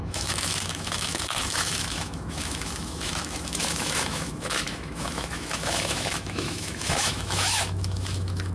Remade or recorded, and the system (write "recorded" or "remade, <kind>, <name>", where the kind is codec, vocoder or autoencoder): remade, autoencoder, DAC-VAE